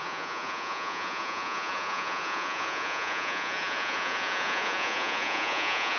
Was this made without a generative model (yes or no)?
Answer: no